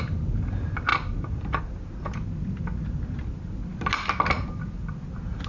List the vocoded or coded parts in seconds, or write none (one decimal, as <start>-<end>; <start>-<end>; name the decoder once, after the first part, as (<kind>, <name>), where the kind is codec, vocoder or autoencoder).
none